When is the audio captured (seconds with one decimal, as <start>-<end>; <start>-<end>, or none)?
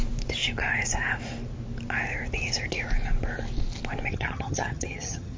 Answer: 0.0-4.1